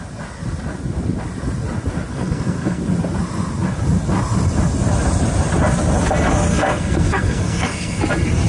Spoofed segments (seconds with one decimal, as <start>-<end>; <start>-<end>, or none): 2.1-2.8; 6.5-8.0